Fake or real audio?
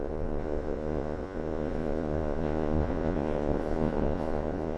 fake